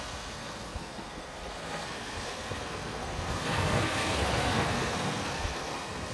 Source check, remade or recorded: remade